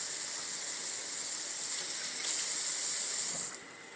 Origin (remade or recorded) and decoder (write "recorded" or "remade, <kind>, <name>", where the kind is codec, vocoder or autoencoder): recorded